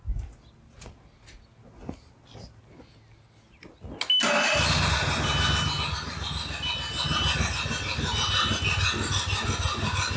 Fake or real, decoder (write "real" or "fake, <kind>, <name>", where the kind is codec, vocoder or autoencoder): real